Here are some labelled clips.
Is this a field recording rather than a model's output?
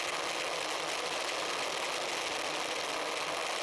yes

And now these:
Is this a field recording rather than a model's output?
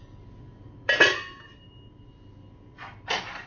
yes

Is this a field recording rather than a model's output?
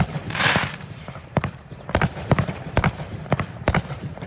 no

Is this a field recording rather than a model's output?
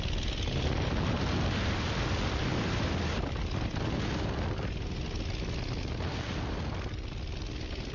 yes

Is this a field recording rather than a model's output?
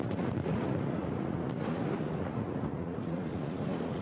no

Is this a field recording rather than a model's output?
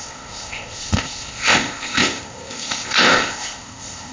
no